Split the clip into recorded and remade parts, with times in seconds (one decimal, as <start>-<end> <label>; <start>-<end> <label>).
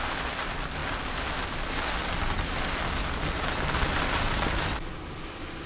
0.0-5.7 recorded